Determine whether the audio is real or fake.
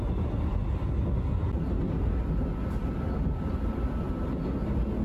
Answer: real